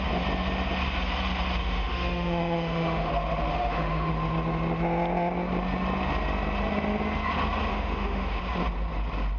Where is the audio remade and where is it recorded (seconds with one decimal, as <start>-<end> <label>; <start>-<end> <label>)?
0.0-1.6 recorded; 1.6-3.1 remade; 3.1-3.5 recorded; 3.5-4.1 remade; 4.1-7.7 recorded; 7.7-8.4 remade; 8.4-9.4 recorded